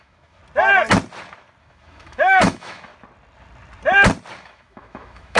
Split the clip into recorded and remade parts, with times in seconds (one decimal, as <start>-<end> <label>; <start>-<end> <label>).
0.0-0.4 remade; 0.4-1.6 recorded; 1.6-2.9 remade; 2.9-4.4 recorded; 4.4-5.4 remade